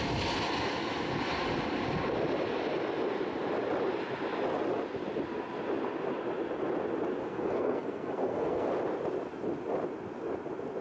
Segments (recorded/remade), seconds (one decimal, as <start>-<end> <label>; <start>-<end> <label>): 0.0-7.2 recorded; 7.2-8.7 remade; 8.7-10.8 recorded

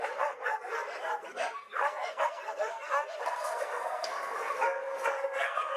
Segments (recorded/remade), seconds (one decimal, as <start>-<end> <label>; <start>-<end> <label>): 0.0-5.8 remade

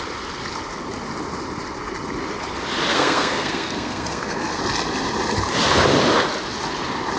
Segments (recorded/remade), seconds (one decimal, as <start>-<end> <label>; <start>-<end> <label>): 0.0-2.9 recorded; 2.9-4.6 remade; 4.6-7.2 recorded